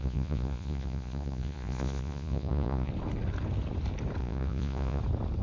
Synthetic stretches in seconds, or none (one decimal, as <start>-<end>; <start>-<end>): 0.0-2.9; 4.2-5.0